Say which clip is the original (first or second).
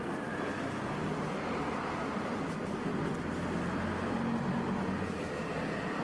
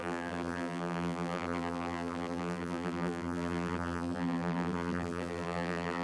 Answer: first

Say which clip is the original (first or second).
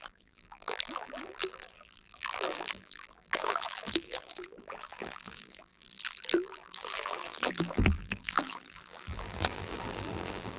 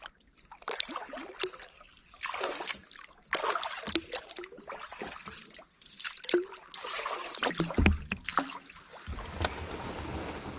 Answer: second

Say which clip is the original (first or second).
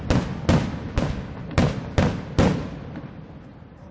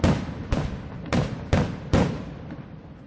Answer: first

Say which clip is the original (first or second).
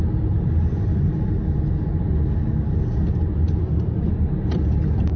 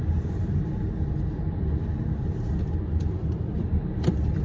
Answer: first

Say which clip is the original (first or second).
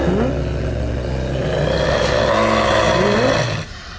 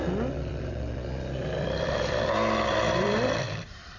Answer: first